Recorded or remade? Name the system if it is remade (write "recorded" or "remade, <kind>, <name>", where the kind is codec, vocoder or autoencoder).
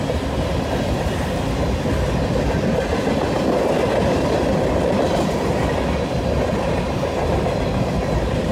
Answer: recorded